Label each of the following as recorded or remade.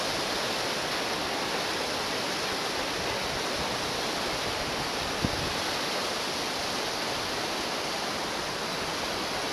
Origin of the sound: recorded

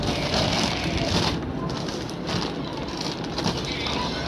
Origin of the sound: recorded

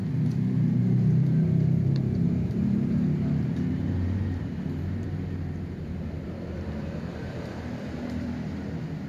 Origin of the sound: remade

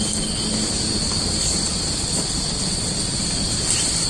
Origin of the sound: recorded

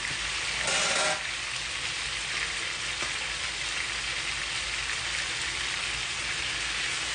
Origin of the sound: recorded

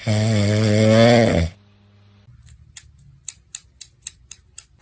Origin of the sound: recorded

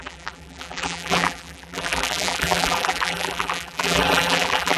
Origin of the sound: remade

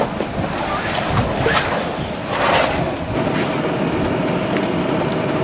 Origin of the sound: recorded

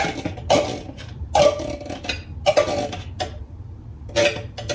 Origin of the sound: recorded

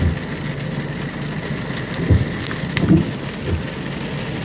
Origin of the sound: recorded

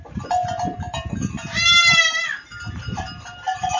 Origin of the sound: remade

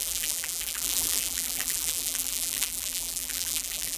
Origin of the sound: remade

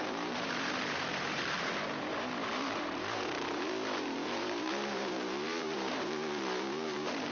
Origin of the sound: remade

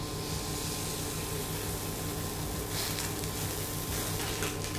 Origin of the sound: recorded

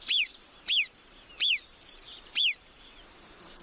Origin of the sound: remade